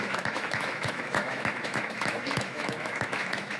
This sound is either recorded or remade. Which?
remade